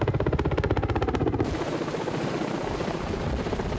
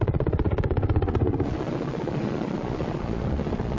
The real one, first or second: first